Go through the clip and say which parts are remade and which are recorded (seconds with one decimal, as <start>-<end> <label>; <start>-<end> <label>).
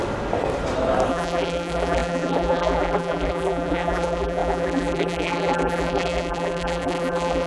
0.0-1.1 recorded; 1.1-7.5 remade